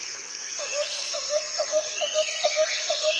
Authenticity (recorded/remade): remade